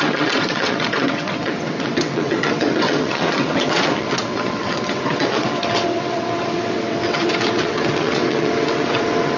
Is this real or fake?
fake